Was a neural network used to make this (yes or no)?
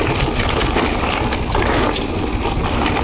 no